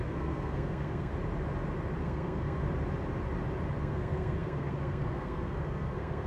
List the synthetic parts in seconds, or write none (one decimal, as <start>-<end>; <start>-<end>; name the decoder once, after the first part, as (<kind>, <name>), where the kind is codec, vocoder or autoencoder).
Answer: 0.0-1.1 (codec, SNAC); 2.0-2.6; 3.8-6.3